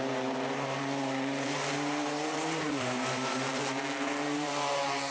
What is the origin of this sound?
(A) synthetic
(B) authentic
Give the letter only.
A